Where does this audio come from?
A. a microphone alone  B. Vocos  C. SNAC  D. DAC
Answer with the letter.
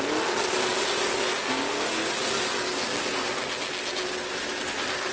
A